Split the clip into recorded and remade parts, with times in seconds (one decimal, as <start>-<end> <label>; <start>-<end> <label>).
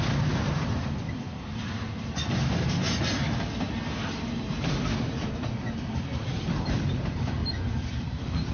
0.0-3.2 remade; 3.2-4.8 recorded; 4.8-8.5 remade